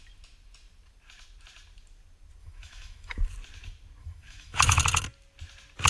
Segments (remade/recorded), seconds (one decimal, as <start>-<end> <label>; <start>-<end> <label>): 0.0-2.4 recorded; 2.4-3.3 remade; 3.3-4.0 recorded; 4.0-4.8 remade; 4.8-5.9 recorded